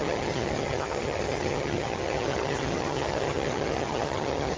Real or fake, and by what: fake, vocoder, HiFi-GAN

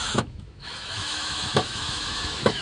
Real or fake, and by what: fake, autoencoder, DAC-VAE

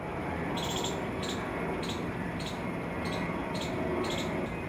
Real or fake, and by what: real